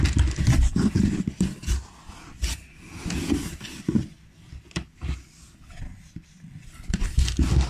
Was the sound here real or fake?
real